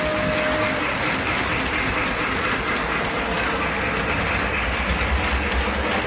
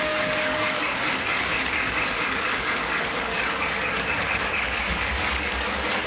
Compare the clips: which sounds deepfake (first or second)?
second